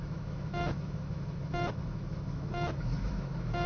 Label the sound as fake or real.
fake